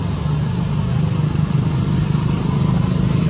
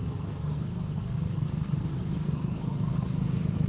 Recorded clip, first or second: first